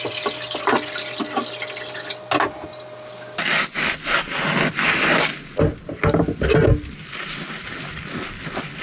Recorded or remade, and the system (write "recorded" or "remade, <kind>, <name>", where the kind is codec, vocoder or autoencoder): recorded